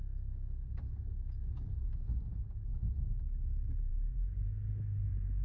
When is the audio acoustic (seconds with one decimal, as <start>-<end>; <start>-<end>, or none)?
0.0-5.4

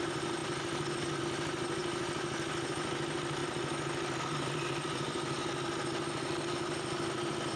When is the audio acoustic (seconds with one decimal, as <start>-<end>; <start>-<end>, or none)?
0.0-7.6

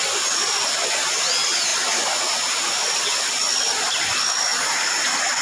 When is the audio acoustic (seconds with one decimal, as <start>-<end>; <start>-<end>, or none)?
0.0-4.5